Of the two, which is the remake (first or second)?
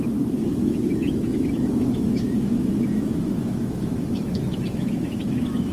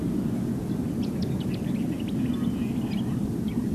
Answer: first